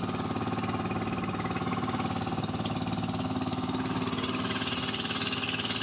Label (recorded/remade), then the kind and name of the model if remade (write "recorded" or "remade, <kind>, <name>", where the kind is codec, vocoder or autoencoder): recorded